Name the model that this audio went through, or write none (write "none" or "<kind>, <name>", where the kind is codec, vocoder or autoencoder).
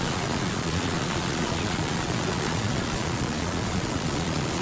vocoder, Vocos